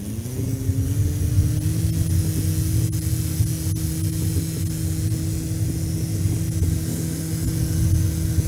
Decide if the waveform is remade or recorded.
recorded